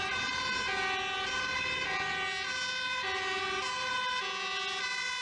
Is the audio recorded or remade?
recorded